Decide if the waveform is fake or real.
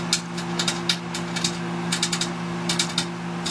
real